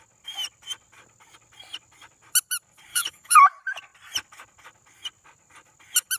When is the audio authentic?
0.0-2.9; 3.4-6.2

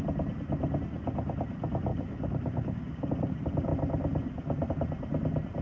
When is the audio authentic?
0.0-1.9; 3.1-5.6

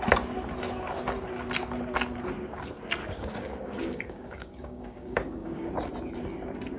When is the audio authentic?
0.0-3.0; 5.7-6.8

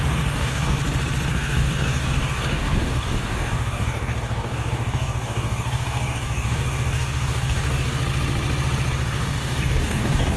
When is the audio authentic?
0.8-1.3; 8.0-8.9

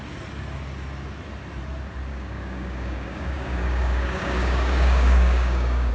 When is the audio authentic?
0.0-2.1